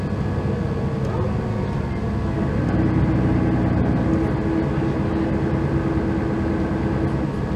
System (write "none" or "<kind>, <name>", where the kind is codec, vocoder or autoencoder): none